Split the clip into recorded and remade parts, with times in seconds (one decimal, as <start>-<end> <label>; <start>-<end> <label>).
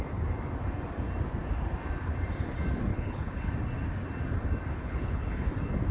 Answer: 0.0-2.9 recorded; 2.9-3.5 remade; 3.5-4.7 recorded; 4.7-5.5 remade; 5.5-5.9 recorded